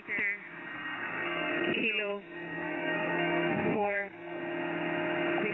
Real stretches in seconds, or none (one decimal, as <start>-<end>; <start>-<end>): 0.0-0.7; 1.5-2.1; 4.4-5.5